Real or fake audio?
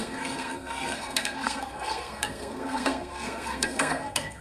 fake